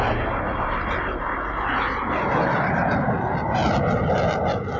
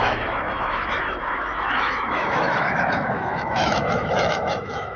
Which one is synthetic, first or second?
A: second